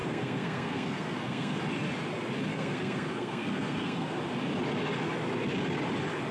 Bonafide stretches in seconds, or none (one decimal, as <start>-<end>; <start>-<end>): 1.6-2.5; 4.2-6.3